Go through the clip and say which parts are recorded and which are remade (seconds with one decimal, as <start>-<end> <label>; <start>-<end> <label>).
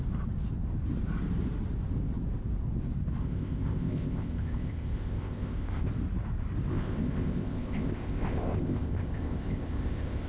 0.0-3.2 recorded; 3.2-5.9 remade; 5.9-6.7 recorded; 6.7-10.3 remade